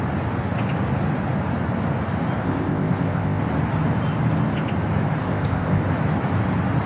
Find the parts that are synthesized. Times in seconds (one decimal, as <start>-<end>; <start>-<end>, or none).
2.4-3.4; 5.2-5.8